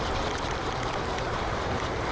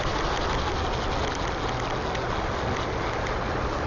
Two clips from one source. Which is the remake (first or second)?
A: first